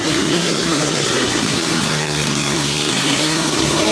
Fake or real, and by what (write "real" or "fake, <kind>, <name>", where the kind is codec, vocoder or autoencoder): fake, codec, SNAC